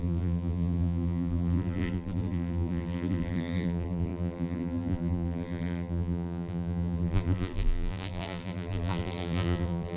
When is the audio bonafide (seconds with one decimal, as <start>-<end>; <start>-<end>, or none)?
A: none

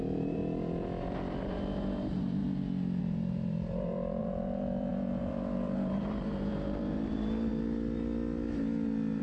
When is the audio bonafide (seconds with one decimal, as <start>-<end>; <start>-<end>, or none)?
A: 0.4-1.4; 2.4-3.0; 7.5-9.2

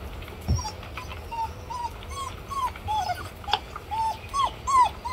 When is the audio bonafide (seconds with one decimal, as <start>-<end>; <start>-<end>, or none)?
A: 0.0-5.1

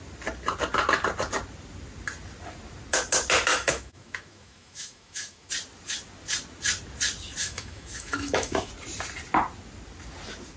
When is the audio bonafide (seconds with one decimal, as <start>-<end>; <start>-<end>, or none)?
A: 0.0-3.5; 5.5-7.4; 8.7-10.6

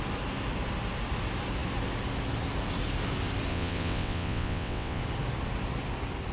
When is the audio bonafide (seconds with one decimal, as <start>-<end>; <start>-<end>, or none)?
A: 0.0-3.5; 5.0-6.3

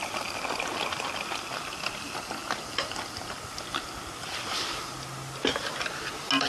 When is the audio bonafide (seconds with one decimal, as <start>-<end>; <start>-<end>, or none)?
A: 0.0-6.5

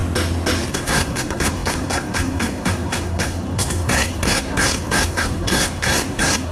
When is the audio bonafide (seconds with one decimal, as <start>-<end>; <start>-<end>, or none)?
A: 0.0-0.7